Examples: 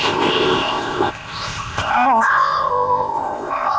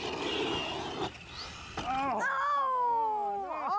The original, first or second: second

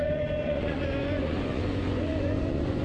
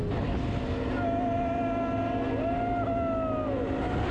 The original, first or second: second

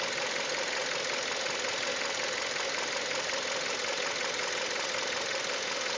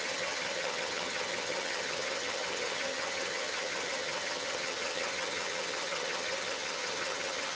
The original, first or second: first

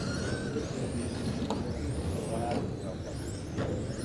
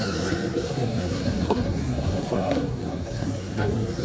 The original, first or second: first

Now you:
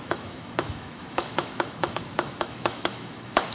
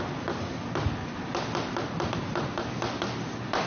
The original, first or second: second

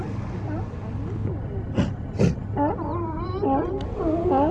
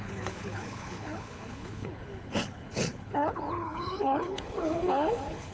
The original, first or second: first